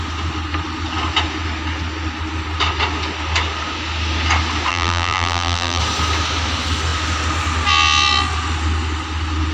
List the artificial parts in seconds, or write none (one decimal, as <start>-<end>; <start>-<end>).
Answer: 4.7-5.8

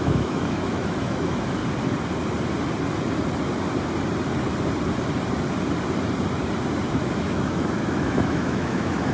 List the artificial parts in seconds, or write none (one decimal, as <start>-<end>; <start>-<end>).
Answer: 0.0-1.6; 6.9-9.1

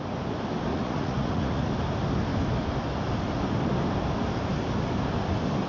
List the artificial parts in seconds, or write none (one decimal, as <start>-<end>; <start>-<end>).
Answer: 0.7-1.7

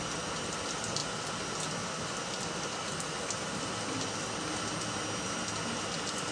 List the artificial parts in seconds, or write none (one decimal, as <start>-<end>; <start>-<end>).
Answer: none

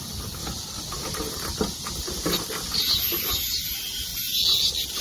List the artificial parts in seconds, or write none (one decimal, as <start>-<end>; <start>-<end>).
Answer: none

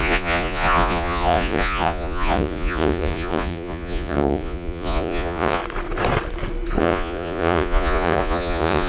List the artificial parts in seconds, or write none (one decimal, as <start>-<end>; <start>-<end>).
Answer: 0.0-5.6; 6.8-8.9

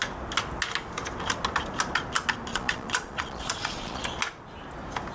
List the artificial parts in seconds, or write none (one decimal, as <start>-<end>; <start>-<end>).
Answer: 2.5-4.0

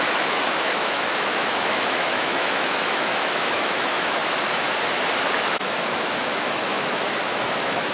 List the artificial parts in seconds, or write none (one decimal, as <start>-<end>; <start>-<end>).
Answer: 0.0-4.2; 5.5-7.9